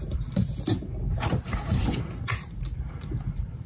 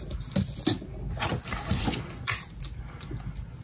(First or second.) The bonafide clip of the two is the second